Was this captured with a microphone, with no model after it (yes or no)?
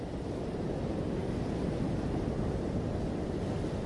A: yes